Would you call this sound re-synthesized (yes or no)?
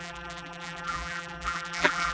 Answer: yes